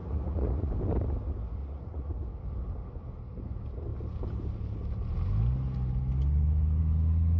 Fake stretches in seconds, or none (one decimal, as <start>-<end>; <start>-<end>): 0.0-0.7; 1.6-2.1